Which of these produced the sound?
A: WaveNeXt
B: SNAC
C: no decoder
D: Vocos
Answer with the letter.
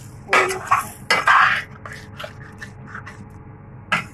C